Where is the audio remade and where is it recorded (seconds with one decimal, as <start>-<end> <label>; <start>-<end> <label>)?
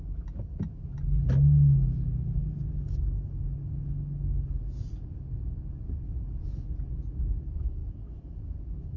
0.0-9.0 recorded